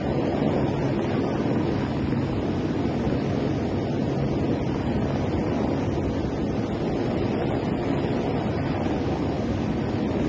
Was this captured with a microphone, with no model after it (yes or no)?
yes